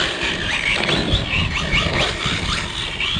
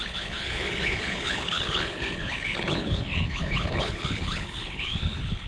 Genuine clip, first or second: first